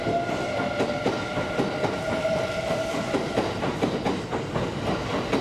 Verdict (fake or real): real